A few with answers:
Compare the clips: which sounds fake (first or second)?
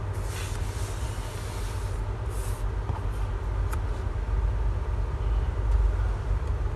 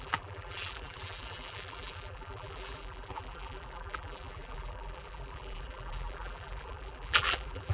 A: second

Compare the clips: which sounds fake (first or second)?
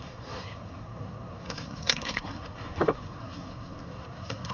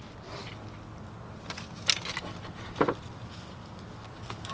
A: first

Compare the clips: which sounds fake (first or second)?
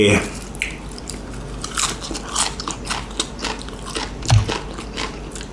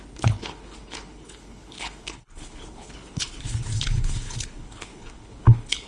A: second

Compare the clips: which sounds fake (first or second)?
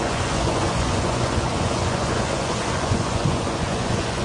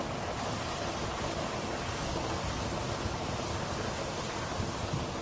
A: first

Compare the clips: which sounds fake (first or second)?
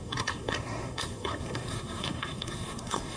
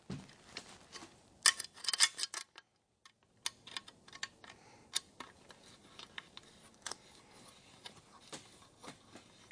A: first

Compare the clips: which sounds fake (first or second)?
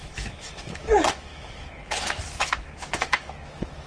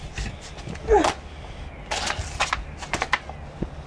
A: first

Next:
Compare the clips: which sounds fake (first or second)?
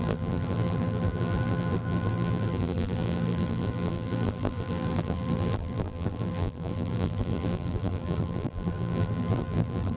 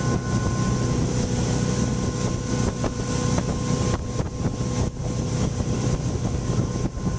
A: first